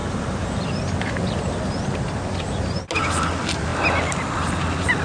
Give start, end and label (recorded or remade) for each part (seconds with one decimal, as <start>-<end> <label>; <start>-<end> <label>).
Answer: 0.0-5.0 recorded